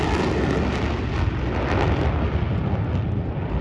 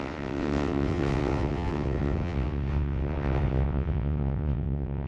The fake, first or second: second